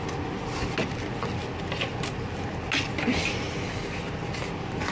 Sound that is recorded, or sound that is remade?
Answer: recorded